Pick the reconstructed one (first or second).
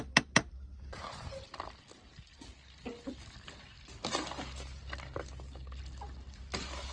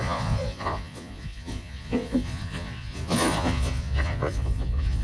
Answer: second